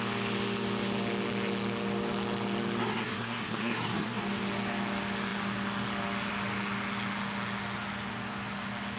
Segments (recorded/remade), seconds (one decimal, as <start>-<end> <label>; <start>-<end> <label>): 0.0-2.8 recorded; 2.8-4.2 remade; 4.2-9.0 recorded